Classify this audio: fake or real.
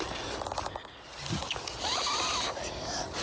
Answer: real